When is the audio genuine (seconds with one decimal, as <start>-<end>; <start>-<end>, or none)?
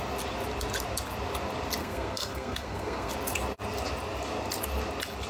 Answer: 0.0-1.8; 3.1-5.3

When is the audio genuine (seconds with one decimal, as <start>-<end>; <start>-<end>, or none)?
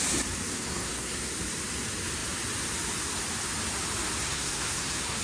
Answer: 0.0-0.5; 1.3-4.2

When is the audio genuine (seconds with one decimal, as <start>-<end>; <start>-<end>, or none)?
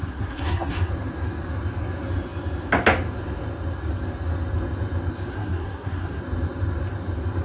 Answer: 0.9-5.3; 6.2-7.4